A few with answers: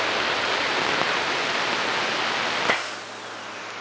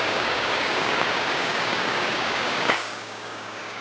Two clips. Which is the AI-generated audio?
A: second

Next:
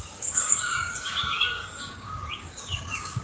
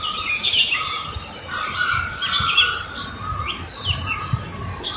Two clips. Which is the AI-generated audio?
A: first